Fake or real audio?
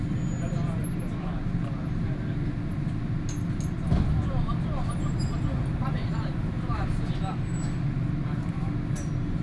real